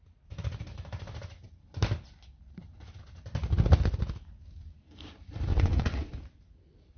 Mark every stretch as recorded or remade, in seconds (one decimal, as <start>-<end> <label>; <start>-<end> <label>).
0.0-5.5 recorded; 5.5-6.1 remade; 6.1-7.0 recorded